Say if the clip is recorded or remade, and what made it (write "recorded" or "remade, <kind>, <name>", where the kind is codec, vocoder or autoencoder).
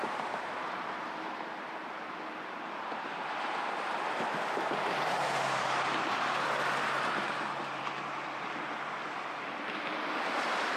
remade, vocoder, BigVGAN v2